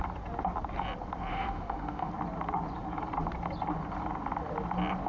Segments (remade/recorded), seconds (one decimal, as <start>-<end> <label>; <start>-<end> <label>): 0.0-1.3 recorded; 1.3-2.1 remade; 2.1-5.1 recorded